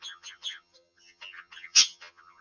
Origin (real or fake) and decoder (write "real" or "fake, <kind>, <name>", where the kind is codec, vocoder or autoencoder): fake, vocoder, HiFi-GAN